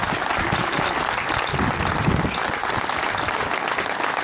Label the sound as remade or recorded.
recorded